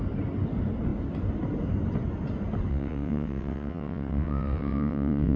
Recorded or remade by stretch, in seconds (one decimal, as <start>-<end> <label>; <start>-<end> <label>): 0.0-2.7 recorded; 2.7-5.4 remade